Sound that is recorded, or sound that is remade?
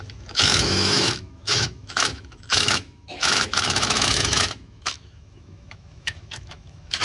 remade